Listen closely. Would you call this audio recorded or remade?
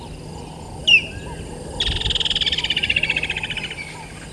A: recorded